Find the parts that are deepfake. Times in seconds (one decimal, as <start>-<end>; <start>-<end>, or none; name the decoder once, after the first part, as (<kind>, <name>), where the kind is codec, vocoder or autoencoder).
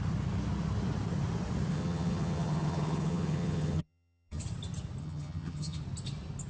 1.7-4.4 (vocoder, HiFi-GAN); 5.0-5.8